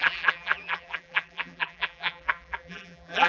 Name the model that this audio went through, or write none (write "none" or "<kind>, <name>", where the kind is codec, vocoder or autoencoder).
vocoder, BigVGAN v2